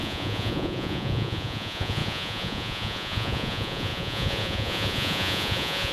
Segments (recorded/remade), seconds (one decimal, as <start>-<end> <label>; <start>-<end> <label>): 0.0-5.9 remade